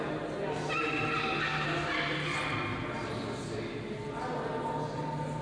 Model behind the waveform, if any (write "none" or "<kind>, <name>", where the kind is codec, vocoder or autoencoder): none